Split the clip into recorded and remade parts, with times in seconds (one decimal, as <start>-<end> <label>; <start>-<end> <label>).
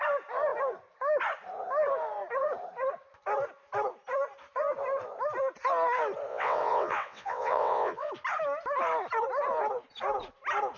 0.0-6.3 recorded; 6.3-8.1 remade; 8.1-10.8 recorded